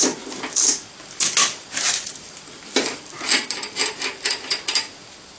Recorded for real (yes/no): yes